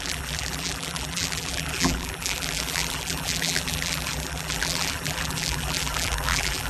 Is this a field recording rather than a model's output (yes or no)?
no